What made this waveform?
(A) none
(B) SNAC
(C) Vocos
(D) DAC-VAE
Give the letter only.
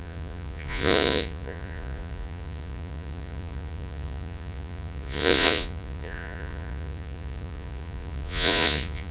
C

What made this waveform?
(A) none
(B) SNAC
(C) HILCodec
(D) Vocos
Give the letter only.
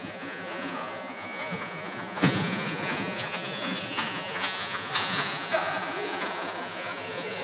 D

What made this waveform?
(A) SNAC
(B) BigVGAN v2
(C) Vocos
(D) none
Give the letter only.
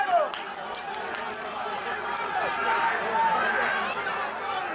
D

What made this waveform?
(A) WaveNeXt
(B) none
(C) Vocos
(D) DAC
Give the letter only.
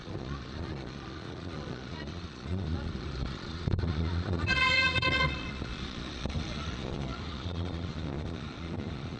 C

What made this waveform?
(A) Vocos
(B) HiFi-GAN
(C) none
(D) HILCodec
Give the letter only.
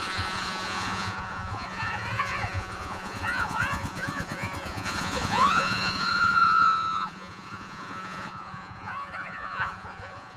A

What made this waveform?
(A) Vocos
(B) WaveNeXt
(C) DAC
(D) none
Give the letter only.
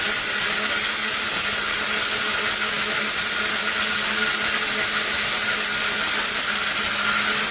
D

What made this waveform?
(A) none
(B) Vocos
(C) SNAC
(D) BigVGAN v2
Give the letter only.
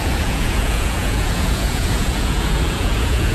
B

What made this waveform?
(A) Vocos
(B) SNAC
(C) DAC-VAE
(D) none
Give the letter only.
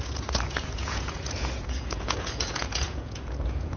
A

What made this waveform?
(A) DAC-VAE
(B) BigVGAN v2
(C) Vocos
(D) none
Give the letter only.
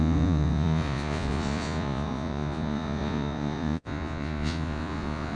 C